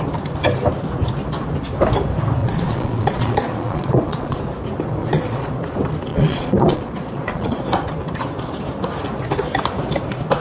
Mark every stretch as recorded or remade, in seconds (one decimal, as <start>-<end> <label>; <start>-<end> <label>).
0.0-2.4 recorded; 2.4-4.4 remade; 4.4-5.0 recorded; 5.0-5.5 remade; 5.5-6.1 recorded; 6.1-7.6 remade; 7.6-10.4 recorded